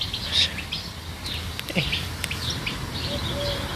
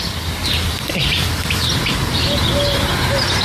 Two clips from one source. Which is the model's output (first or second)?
second